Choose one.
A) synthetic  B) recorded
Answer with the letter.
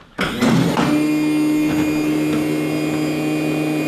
B